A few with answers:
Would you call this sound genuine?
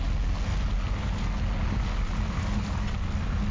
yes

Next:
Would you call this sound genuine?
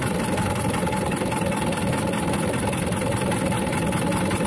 yes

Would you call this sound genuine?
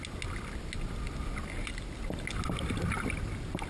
yes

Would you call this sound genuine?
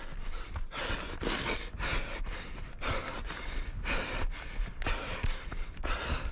yes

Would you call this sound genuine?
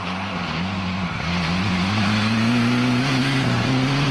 yes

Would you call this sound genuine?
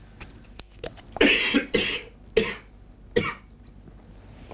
yes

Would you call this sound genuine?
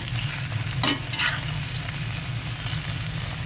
yes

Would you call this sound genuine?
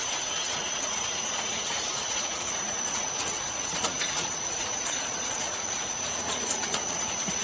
no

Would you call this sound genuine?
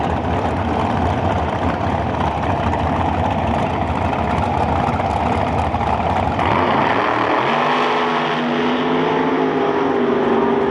yes